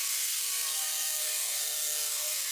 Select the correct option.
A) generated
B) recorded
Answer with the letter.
A